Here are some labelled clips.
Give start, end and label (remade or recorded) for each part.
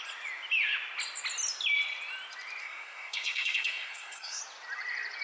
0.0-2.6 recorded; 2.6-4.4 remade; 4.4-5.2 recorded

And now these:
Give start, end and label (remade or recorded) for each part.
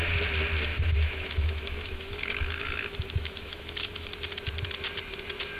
0.0-0.7 recorded; 0.7-4.1 remade; 4.1-5.6 recorded